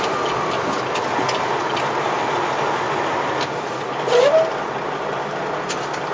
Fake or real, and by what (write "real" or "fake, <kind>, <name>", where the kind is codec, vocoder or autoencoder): real